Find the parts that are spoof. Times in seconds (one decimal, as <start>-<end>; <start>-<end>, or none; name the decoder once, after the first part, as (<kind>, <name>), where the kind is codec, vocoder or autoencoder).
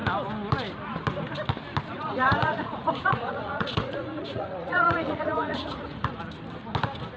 1.9-6.2 (vocoder, Vocos)